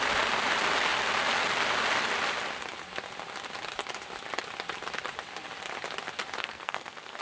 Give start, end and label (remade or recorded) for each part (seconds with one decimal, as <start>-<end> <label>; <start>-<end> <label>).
0.0-6.4 recorded; 6.4-7.2 remade